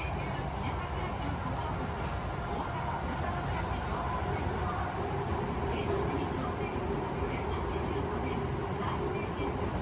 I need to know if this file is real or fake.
real